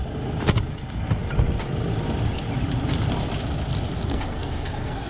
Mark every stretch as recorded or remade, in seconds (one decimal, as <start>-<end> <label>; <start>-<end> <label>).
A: 0.0-4.1 recorded; 4.1-5.1 remade